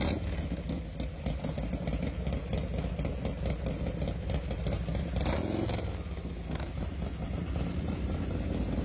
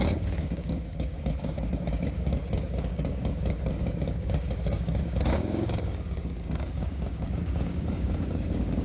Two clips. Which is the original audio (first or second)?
first